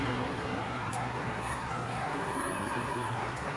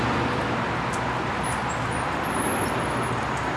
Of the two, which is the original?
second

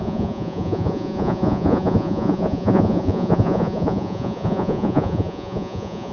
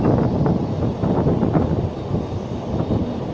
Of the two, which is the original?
second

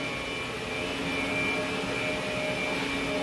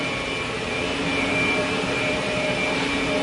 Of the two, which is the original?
first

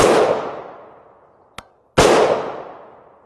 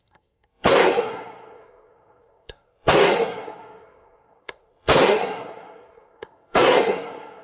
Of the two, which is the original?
first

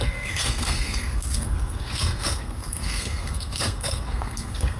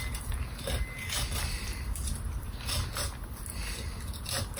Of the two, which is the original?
second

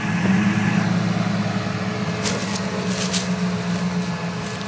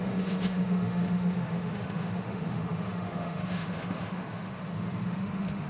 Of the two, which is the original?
first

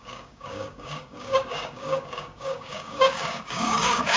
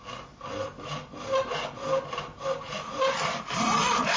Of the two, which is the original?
second